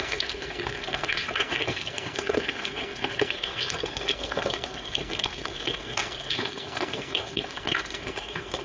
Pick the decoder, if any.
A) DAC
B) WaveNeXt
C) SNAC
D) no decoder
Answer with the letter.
C